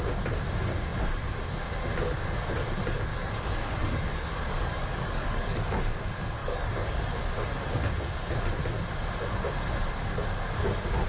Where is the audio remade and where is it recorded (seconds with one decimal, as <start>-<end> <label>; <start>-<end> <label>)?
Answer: 0.0-3.1 recorded; 3.1-6.0 remade; 6.0-6.4 recorded; 6.4-7.1 remade; 7.1-11.1 recorded